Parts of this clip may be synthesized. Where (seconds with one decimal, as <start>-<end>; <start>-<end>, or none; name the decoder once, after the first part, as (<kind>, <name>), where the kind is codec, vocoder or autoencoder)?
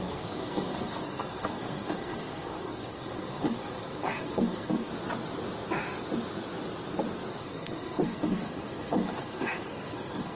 0.0-4.9 (codec, SNAC); 7.4-10.4